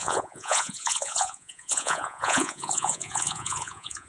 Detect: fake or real fake